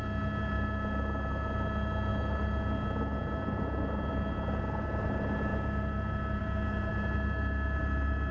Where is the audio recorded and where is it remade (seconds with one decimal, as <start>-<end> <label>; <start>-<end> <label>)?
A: 0.0-8.3 recorded